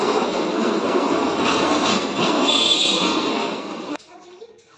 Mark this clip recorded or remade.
remade